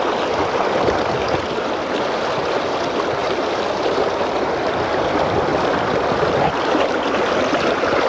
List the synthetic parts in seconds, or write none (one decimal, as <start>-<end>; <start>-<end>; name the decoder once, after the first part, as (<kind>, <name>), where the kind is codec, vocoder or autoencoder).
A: 3.2-4.0 (vocoder, BigVGAN v2); 5.5-7.4